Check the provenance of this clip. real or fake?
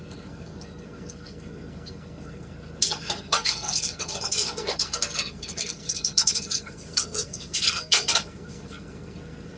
fake